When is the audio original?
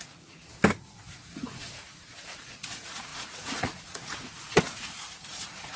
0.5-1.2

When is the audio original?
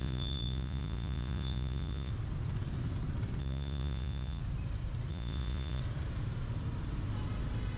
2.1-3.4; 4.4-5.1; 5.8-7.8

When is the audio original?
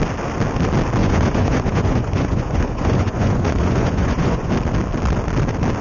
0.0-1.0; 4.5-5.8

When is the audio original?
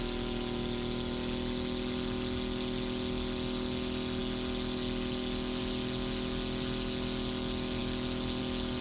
0.0-8.8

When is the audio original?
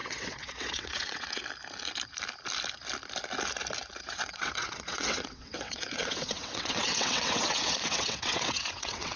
1.4-4.0